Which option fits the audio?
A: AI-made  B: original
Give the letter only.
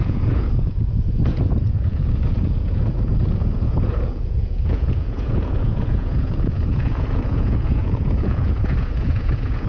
A